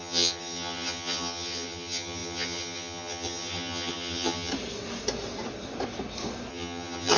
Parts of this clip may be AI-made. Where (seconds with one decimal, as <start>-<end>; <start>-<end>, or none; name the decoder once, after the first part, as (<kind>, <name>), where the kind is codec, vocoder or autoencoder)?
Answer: 0.0-4.5 (vocoder, HiFi-GAN); 6.5-7.2